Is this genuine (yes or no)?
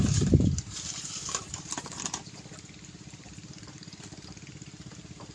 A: no